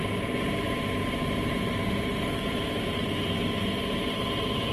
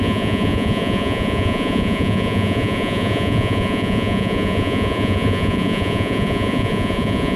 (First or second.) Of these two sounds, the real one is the first